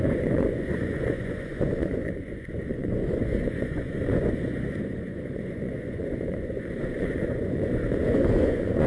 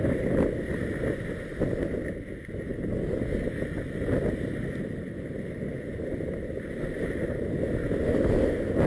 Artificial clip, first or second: first